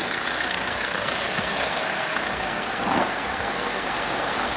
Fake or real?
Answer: fake